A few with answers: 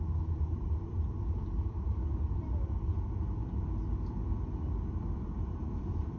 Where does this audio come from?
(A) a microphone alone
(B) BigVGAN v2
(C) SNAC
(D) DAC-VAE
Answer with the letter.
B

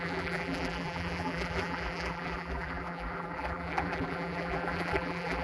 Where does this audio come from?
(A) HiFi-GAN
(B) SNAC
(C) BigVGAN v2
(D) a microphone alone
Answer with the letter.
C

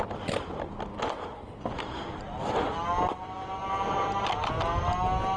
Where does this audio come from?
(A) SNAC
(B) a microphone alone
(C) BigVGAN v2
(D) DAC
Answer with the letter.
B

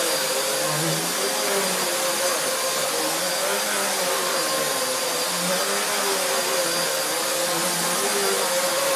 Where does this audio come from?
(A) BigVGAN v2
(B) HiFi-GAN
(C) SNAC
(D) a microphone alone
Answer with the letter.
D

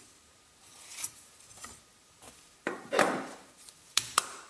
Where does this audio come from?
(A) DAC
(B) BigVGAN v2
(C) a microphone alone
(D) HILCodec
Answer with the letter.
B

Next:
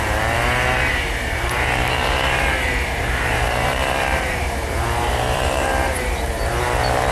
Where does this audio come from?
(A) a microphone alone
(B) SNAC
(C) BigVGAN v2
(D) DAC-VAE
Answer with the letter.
C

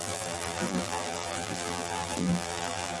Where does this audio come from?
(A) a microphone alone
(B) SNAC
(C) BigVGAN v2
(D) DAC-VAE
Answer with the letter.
C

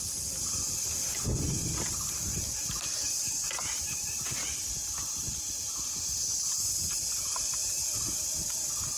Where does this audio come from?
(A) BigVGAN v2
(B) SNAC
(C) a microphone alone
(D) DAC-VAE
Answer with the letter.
A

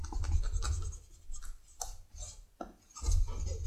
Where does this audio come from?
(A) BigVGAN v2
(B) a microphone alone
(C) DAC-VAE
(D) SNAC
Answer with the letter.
B